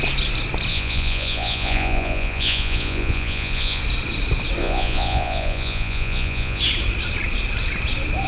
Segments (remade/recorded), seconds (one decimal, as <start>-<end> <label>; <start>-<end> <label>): 0.0-0.7 recorded; 0.7-3.8 remade; 3.8-4.6 recorded; 4.6-6.6 remade; 6.6-8.3 recorded